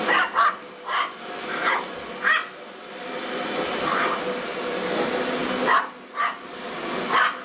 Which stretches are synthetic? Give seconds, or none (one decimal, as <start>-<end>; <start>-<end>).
5.4-6.1